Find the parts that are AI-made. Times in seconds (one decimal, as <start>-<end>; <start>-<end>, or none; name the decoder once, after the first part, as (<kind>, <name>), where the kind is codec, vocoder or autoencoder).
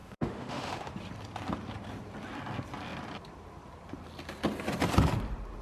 0.0-0.9 (autoencoder, DAC-VAE)